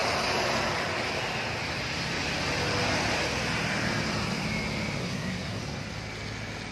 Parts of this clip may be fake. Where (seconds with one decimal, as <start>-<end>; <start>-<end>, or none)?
5.0-5.6